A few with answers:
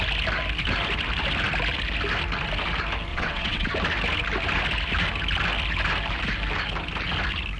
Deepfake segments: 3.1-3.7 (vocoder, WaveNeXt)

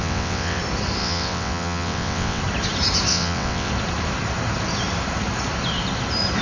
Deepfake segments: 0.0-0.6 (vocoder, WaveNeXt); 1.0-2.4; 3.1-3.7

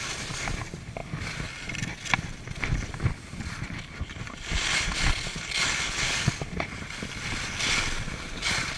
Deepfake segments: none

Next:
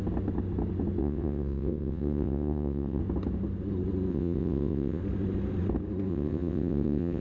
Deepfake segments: 1.0-3.0 (vocoder, WaveNeXt); 4.1-5.0; 6.1-7.2